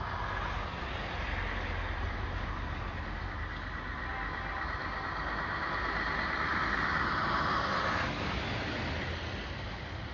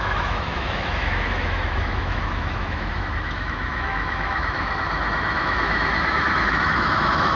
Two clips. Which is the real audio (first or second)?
first